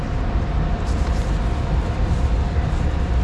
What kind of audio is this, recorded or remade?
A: recorded